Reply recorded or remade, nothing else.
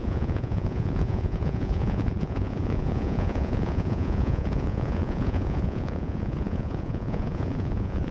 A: remade